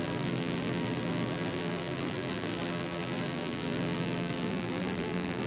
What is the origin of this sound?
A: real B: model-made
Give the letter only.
B